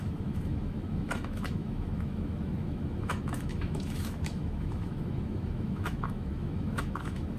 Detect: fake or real fake